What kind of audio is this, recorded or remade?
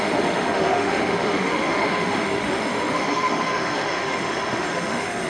remade